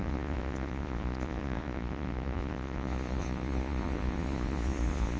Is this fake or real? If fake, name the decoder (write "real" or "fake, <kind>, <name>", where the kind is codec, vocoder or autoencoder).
fake, vocoder, Vocos